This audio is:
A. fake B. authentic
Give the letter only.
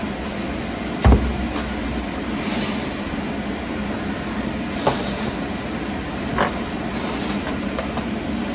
B